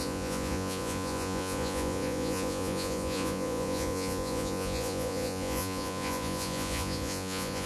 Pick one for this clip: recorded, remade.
remade